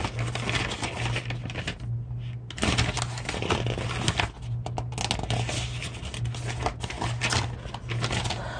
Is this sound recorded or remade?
recorded